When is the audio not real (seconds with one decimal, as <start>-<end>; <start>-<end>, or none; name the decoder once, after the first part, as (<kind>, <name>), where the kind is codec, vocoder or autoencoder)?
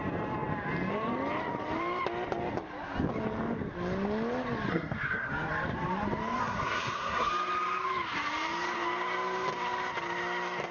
4.7-5.3 (codec, SNAC); 6.4-7.3